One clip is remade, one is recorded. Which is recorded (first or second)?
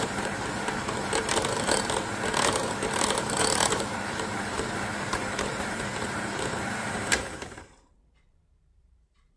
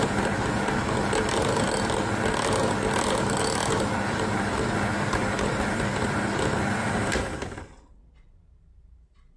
second